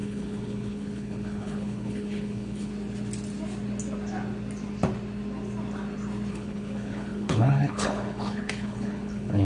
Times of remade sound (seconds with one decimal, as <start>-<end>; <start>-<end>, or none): 0.0-2.7; 6.3-9.4